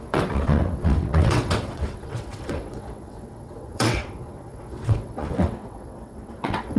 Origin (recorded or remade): remade